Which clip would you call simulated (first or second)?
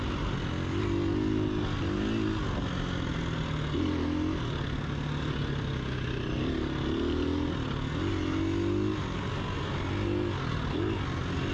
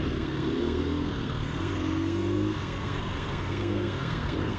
second